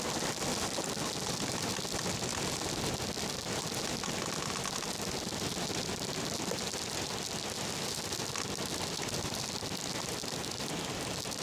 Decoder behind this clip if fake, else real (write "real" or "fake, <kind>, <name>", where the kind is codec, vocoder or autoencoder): real